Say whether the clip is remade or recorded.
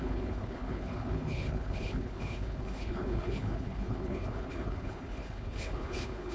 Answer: remade